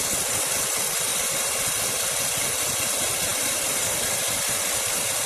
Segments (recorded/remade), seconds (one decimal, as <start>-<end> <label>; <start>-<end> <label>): 0.0-1.1 recorded; 1.1-1.8 remade; 1.8-3.3 recorded; 3.3-5.3 remade